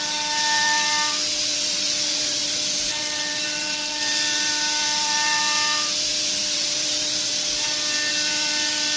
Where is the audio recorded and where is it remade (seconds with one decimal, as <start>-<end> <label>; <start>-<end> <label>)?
0.0-7.3 remade; 7.3-8.1 recorded; 8.1-9.0 remade